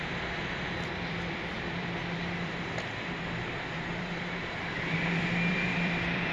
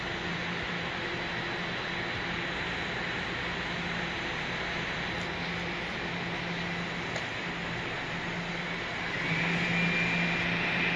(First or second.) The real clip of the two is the second